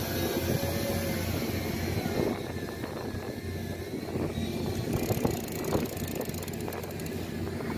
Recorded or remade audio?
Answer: recorded